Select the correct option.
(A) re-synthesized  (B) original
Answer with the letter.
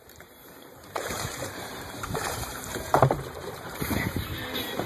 A